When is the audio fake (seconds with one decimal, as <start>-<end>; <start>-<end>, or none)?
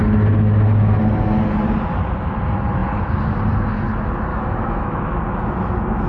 4.3-5.2